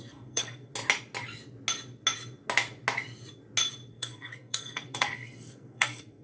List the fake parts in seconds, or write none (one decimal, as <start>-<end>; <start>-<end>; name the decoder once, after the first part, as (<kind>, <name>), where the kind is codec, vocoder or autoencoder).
0.0-0.7 (codec, SNAC); 3.9-6.2

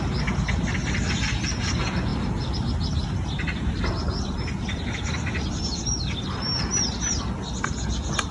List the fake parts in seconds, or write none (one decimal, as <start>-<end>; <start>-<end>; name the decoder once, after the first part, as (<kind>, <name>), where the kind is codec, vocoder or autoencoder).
none